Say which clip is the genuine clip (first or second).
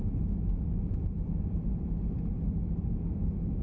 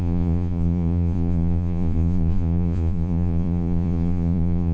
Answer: first